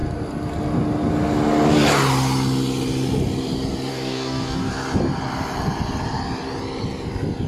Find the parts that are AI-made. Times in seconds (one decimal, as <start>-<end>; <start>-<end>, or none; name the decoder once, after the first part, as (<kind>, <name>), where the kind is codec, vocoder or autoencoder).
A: 3.9-4.7 (codec, DAC)